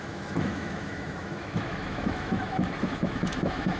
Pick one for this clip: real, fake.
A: fake